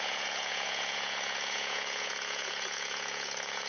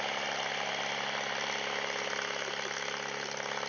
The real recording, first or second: second